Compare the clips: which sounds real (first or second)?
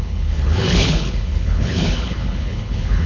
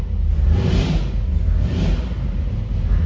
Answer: second